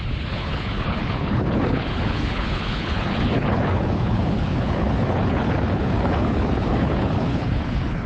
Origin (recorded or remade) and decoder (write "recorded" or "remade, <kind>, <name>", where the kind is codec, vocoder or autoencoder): remade, codec, HILCodec